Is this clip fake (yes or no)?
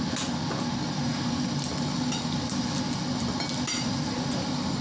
no